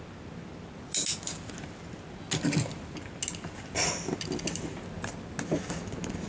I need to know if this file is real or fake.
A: real